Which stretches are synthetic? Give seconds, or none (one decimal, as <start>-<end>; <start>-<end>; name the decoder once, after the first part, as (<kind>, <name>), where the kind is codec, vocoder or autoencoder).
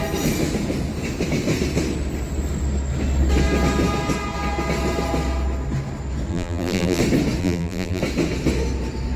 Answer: 6.3-7.0 (vocoder, BigVGAN v2); 7.4-8.0